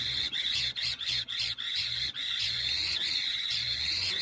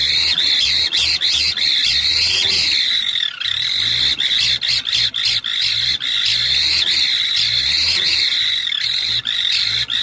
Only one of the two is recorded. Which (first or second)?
second